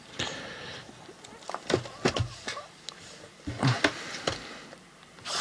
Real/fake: real